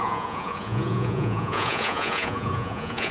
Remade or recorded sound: remade